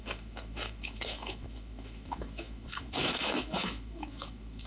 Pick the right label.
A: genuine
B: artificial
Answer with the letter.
B